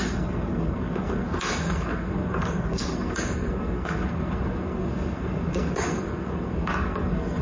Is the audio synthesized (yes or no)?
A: yes